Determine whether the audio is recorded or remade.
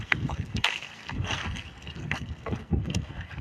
remade